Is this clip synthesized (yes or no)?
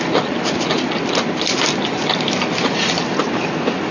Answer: no